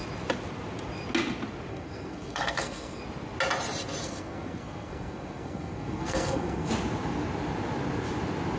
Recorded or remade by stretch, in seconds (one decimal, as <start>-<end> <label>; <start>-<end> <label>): 0.0-1.7 recorded; 1.7-3.0 remade; 3.0-4.0 recorded; 4.0-6.7 remade; 6.7-8.6 recorded